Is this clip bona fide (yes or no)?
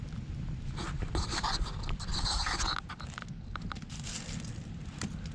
yes